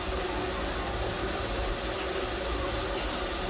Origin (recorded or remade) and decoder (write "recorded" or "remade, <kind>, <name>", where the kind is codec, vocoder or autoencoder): recorded